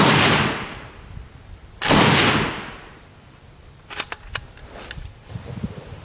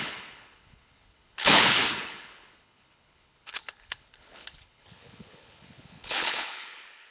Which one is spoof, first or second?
second